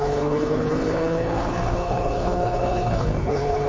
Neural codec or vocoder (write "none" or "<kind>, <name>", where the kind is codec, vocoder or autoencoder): codec, HILCodec